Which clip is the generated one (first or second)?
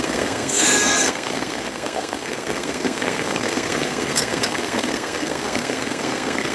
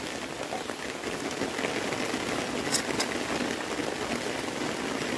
first